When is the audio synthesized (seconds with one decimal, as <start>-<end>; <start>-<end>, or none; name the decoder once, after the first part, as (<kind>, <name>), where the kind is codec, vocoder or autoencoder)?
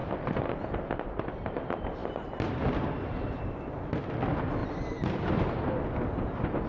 4.6-5.7 (vocoder, BigVGAN v2)